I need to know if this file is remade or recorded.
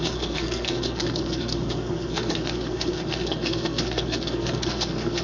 remade